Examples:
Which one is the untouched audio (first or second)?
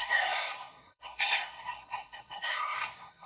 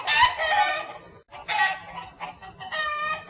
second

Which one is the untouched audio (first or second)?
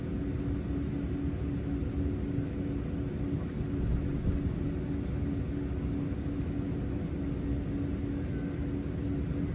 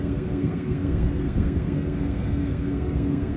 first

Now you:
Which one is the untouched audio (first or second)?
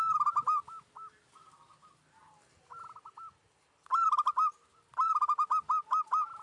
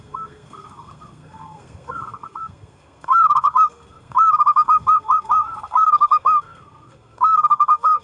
first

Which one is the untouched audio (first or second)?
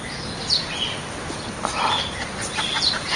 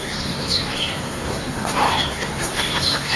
first